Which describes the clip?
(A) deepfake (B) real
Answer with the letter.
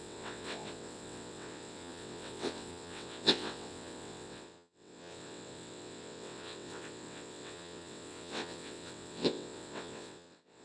A